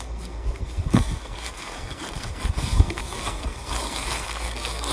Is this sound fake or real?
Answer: fake